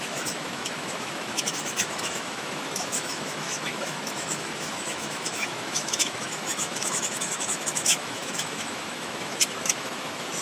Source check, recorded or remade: remade